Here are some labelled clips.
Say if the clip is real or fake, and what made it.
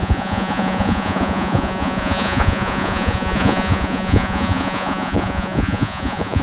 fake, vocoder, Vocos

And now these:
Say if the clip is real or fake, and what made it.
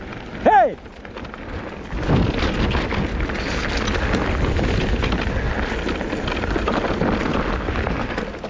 real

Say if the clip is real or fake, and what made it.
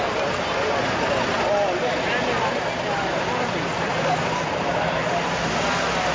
real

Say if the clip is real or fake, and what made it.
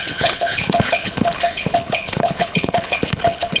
fake, codec, HILCodec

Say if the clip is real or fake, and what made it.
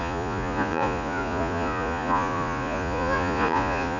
fake, vocoder, Vocos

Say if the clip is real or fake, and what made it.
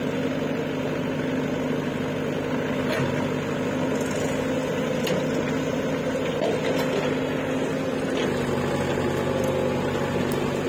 real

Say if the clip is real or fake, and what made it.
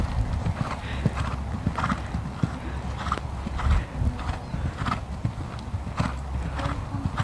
real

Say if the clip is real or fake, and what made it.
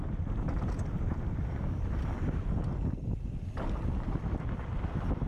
real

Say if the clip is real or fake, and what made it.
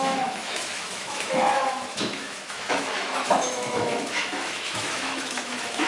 fake, autoencoder, DAC-VAE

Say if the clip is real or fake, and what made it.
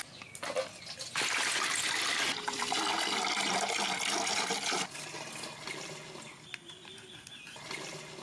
real